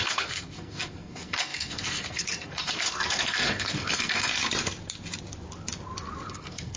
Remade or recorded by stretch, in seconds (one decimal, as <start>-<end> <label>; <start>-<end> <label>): 0.0-4.3 remade; 4.3-6.3 recorded; 6.3-6.8 remade